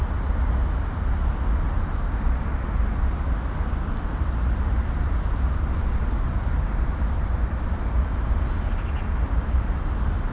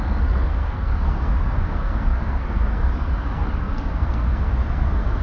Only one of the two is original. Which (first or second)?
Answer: first